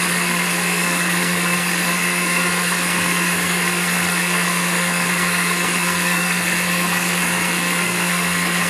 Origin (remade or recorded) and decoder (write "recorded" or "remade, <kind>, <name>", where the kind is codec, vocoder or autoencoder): remade, codec, SNAC